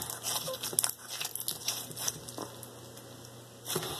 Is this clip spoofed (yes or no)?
no